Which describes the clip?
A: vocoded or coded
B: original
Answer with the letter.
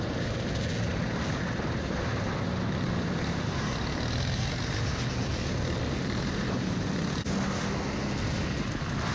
B